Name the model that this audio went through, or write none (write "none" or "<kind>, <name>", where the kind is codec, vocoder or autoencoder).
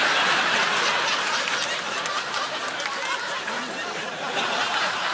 none